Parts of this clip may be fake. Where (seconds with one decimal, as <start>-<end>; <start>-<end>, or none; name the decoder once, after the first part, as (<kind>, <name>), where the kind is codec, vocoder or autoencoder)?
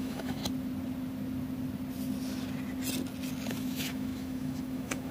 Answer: 0.0-0.4 (autoencoder, DAC-VAE); 3.5-5.1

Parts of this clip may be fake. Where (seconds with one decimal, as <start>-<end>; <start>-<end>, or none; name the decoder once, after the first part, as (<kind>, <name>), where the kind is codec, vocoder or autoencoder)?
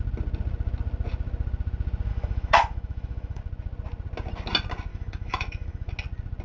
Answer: 2.1-3.4 (autoencoder, DAC-VAE); 4.9-5.9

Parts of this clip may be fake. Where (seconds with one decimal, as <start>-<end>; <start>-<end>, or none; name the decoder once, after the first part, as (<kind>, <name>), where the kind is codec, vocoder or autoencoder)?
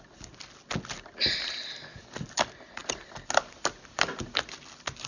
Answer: none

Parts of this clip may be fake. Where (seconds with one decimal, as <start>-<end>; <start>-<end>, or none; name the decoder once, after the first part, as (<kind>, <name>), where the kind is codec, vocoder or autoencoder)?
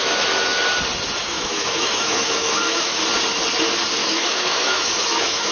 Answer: 1.2-3.0 (autoencoder, DAC-VAE); 4.0-5.5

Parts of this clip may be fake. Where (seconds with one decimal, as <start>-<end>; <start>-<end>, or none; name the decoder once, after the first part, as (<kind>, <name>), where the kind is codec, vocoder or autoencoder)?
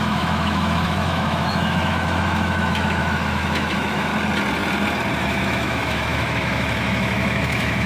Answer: 0.0-4.1 (autoencoder, DAC-VAE); 5.2-7.9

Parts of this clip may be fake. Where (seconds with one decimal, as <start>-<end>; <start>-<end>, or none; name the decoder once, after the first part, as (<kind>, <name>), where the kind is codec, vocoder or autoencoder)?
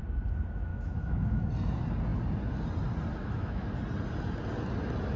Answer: 0.7-1.5 (autoencoder, DAC-VAE); 3.2-3.7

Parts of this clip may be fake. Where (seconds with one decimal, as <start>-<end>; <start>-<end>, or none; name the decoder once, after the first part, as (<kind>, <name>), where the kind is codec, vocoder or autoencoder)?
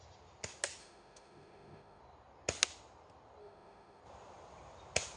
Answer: 0.8-2.0 (autoencoder, DAC-VAE); 3.4-4.0